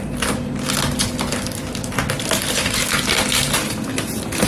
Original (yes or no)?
yes